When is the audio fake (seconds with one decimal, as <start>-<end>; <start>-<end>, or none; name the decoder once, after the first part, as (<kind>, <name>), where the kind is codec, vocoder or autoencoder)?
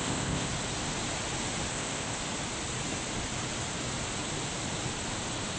0.0-0.5 (codec, ZipCodec); 1.7-2.2